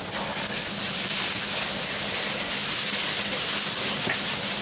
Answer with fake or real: real